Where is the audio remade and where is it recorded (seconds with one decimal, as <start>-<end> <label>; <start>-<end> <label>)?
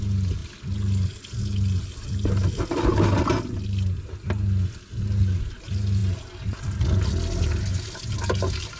0.0-8.8 recorded